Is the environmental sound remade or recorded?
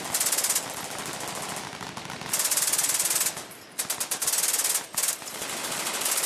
recorded